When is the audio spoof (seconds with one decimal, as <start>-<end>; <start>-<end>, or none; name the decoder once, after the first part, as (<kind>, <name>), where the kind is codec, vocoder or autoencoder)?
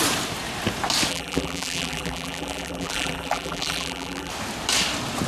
1.1-4.3 (vocoder, BigVGAN v2)